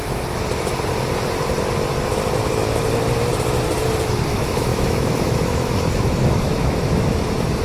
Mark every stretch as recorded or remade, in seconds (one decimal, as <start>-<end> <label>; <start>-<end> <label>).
0.0-4.3 recorded; 4.3-7.6 remade